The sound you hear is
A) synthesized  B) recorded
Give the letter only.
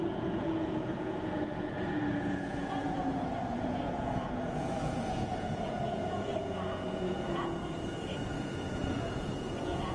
A